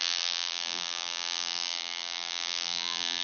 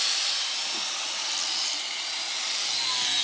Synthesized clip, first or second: first